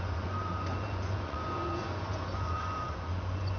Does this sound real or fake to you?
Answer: fake